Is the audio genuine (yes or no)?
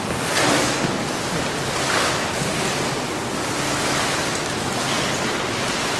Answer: yes